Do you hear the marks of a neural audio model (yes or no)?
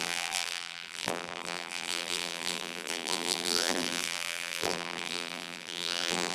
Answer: yes